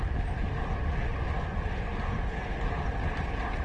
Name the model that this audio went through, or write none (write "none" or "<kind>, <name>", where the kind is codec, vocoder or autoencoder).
none